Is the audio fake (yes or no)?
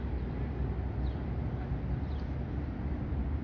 no